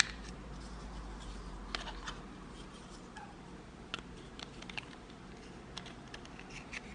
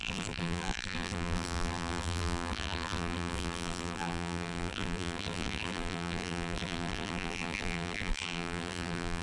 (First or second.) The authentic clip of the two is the first